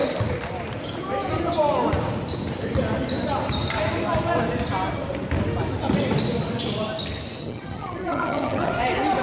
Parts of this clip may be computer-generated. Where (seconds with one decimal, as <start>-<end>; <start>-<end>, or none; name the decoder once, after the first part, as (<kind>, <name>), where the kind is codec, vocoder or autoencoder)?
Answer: 7.4-8.7 (vocoder, HiFi-GAN)